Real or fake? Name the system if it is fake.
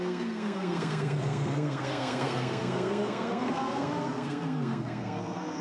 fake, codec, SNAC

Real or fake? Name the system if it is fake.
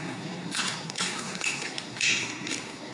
fake, codec, SNAC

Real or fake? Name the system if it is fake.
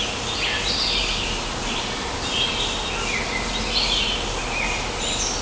real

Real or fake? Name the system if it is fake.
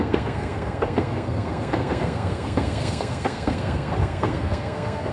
fake, codec, SNAC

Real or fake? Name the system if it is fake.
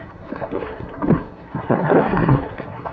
fake, codec, SNAC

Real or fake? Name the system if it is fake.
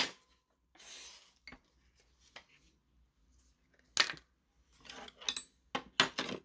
real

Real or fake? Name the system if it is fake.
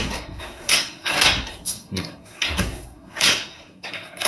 fake, codec, SNAC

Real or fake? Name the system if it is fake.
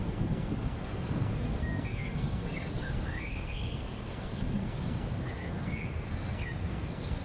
fake, codec, SNAC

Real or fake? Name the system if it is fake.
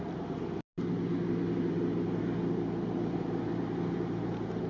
real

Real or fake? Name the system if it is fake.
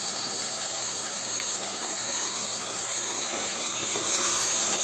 fake, codec, SNAC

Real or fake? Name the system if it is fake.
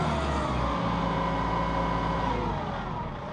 real